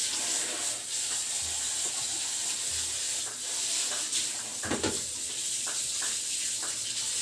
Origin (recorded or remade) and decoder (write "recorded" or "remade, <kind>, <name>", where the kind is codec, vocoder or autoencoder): recorded